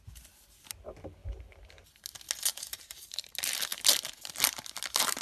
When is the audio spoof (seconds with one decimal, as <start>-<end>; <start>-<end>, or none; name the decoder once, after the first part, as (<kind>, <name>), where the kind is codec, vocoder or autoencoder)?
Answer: 2.5-3.3 (vocoder, BigVGAN v2)